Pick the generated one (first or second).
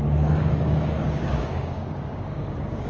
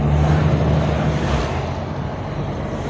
first